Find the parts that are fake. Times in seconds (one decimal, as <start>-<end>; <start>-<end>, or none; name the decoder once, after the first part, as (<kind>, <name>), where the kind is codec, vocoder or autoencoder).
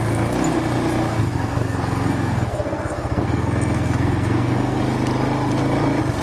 1.1-4.8 (codec, SNAC)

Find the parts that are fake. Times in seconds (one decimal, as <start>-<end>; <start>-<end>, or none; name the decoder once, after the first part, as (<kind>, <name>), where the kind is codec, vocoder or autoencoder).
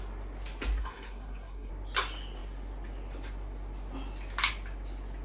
0.8-1.7 (codec, SNAC)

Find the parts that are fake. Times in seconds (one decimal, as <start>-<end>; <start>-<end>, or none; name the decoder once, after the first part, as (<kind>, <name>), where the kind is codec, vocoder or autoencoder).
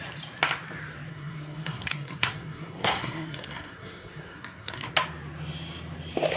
1.1-4.9 (codec, SNAC)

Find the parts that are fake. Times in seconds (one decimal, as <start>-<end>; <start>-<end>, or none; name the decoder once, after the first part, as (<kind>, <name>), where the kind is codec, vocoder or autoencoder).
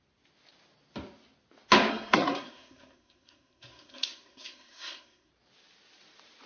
1.9-5.3 (codec, SNAC)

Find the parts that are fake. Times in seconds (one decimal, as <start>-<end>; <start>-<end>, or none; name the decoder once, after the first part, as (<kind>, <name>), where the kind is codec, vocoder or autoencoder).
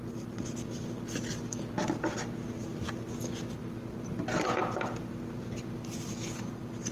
none